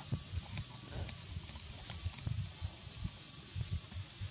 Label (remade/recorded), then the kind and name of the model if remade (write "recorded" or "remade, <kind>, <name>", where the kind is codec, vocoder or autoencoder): recorded